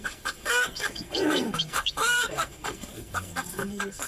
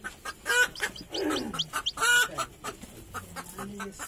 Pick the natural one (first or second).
second